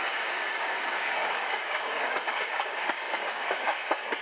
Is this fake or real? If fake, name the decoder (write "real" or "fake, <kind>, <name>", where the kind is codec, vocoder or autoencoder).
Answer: fake, codec, DAC